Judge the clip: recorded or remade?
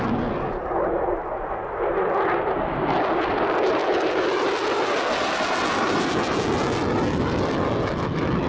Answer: recorded